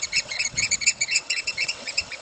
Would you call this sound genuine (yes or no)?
no